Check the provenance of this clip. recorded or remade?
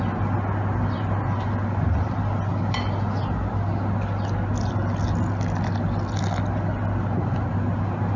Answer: recorded